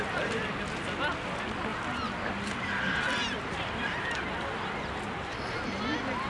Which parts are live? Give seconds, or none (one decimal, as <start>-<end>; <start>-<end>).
0.0-6.3